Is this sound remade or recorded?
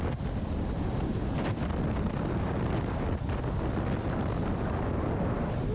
recorded